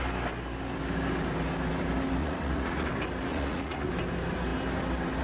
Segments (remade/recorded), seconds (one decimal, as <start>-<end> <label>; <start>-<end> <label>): 0.0-2.2 recorded; 2.2-2.9 remade; 2.9-3.3 recorded; 3.3-3.9 remade; 3.9-5.2 recorded